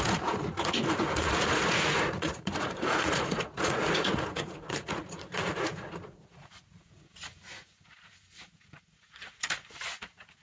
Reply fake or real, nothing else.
fake